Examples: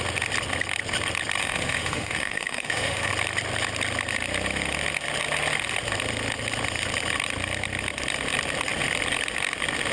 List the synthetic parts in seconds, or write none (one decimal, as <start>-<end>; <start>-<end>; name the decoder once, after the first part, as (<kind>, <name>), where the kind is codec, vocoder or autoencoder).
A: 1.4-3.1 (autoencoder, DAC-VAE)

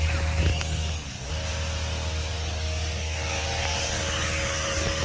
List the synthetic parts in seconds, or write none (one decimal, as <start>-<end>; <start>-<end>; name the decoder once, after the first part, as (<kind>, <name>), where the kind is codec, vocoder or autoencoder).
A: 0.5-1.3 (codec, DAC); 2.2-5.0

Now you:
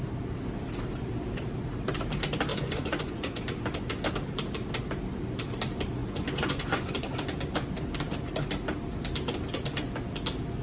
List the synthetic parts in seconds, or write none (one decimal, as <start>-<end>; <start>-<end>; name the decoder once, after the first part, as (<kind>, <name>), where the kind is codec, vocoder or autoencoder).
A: 2.5-3.4 (vocoder, Vocos); 6.0-7.1

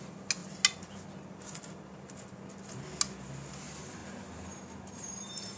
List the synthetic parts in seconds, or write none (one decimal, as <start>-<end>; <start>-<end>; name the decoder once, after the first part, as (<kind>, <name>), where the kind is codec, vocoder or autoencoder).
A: none

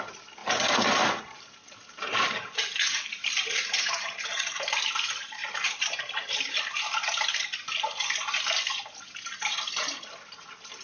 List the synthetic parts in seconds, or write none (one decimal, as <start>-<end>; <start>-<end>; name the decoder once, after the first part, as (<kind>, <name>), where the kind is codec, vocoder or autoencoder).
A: 0.4-4.9 (vocoder, BigVGAN v2)

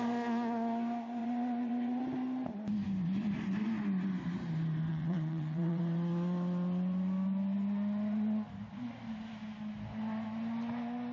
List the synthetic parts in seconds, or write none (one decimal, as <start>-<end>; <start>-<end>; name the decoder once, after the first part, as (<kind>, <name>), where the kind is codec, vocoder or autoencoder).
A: 1.2-2.0 (vocoder, WaveNeXt); 4.9-5.8